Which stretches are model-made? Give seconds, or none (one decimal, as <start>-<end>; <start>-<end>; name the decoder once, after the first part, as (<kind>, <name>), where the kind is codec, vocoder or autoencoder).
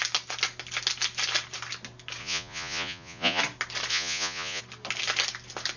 2.2-3.4 (vocoder, Vocos); 3.9-4.6